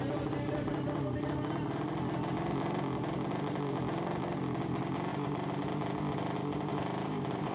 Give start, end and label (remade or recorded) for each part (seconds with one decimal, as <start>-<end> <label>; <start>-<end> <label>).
0.0-5.1 recorded; 5.1-5.7 remade; 5.7-6.7 recorded; 6.7-7.5 remade

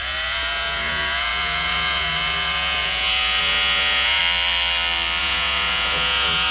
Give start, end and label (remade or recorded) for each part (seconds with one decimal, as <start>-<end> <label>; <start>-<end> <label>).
0.0-4.2 remade; 4.2-5.2 recorded; 5.2-6.5 remade

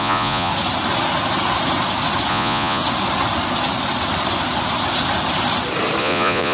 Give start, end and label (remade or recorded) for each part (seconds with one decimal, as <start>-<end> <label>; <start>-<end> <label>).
0.0-0.5 remade; 0.5-2.3 recorded; 2.3-2.8 remade; 2.8-6.0 recorded; 6.0-6.5 remade

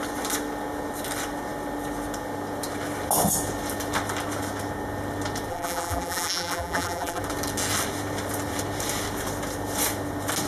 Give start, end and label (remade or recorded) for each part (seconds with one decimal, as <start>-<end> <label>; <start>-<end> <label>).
0.0-5.5 recorded; 5.5-7.2 remade; 7.2-10.5 recorded

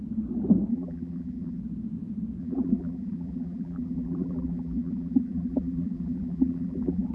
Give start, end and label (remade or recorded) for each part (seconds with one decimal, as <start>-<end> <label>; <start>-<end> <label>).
0.0-0.7 recorded; 0.7-1.6 remade; 1.6-2.4 recorded; 2.4-7.1 remade

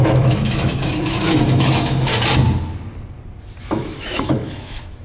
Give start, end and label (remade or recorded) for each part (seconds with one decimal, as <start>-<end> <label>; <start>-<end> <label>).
0.0-2.1 remade; 2.1-3.6 recorded; 3.6-5.0 remade

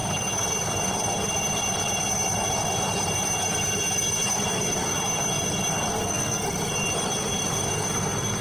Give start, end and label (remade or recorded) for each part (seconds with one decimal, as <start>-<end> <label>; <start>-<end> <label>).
0.0-5.9 recorded; 5.9-6.7 remade; 6.7-8.4 recorded